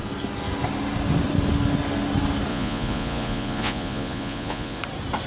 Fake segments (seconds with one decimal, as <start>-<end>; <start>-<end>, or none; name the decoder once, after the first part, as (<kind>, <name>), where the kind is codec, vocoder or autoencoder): 2.5-4.8 (vocoder, Vocos)

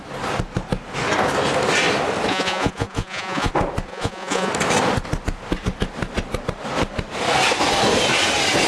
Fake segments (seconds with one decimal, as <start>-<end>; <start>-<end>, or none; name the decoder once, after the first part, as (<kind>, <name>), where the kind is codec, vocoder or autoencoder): 2.3-3.5 (vocoder, Vocos); 3.9-4.5